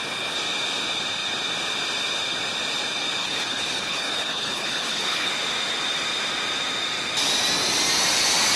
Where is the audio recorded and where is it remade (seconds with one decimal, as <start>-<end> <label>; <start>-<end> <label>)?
0.0-3.2 recorded; 3.2-5.3 remade; 5.3-8.6 recorded